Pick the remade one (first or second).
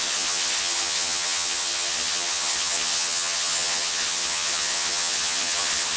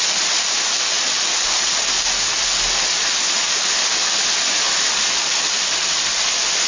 first